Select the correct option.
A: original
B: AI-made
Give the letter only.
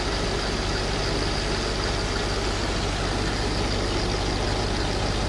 A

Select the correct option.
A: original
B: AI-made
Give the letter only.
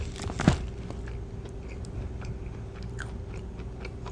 A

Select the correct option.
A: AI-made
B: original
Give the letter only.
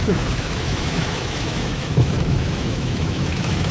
A